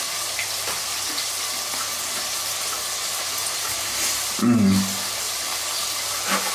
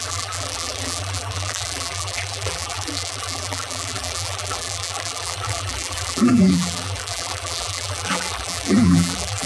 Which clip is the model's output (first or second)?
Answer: second